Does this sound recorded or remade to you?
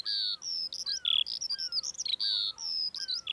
recorded